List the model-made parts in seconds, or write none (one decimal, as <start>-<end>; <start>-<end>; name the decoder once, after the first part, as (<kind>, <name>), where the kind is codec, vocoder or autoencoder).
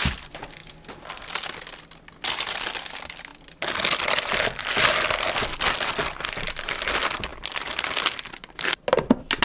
none